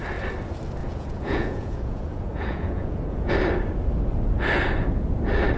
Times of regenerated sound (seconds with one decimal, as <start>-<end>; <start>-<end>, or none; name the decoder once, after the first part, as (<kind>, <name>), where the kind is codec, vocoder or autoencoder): 0.8-3.3 (vocoder, Vocos)